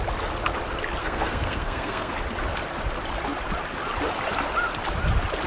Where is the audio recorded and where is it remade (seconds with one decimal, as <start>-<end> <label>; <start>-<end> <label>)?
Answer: 0.0-1.0 recorded; 1.0-2.1 remade; 2.1-5.5 recorded